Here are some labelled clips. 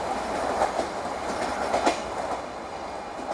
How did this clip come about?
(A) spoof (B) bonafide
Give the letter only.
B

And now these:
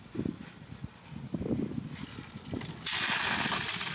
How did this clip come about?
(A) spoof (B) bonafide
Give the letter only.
B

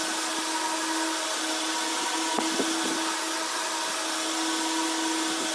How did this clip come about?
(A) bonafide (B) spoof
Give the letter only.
A